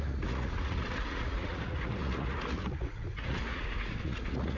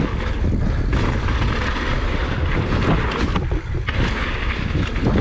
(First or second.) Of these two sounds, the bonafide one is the second